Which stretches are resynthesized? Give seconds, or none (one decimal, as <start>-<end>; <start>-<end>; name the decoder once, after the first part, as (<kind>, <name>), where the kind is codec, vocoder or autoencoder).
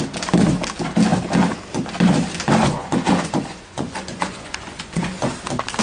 2.6-5.3 (vocoder, Vocos)